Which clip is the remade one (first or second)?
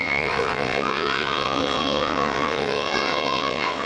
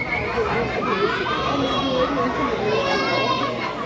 first